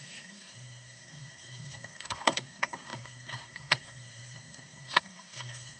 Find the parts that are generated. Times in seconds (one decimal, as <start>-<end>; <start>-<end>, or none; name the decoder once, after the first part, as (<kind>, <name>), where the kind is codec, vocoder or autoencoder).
0.0-5.8 (codec, SNAC)